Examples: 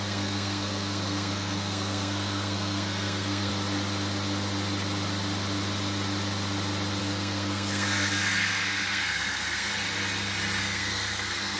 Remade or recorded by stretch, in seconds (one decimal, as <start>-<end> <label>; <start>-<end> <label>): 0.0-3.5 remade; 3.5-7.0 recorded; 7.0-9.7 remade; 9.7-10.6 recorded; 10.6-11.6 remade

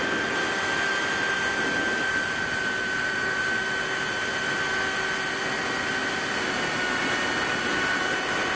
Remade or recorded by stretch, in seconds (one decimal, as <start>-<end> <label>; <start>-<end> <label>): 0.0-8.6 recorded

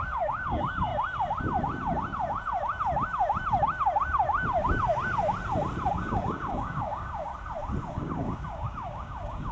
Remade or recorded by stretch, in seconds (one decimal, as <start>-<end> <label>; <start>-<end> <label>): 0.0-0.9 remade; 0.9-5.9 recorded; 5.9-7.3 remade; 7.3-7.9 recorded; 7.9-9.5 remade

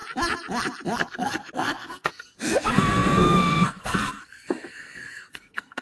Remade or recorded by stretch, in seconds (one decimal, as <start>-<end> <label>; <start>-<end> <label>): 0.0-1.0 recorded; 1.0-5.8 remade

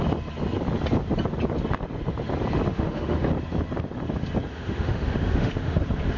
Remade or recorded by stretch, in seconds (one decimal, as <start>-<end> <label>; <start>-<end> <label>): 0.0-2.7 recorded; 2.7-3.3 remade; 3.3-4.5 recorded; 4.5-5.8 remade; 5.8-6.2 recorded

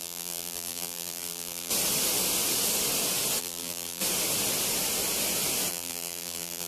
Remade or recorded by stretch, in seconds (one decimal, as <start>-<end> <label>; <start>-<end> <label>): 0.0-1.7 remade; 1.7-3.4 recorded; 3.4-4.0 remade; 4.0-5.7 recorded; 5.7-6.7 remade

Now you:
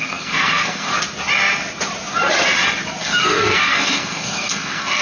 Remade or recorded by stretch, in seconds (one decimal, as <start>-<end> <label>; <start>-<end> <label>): 0.0-0.9 remade; 0.9-3.0 recorded; 3.0-5.0 remade